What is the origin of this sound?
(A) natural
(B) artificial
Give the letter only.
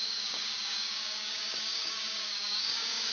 B